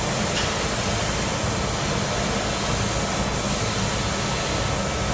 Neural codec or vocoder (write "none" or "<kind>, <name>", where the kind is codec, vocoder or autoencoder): none